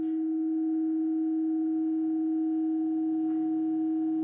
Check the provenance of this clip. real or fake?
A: fake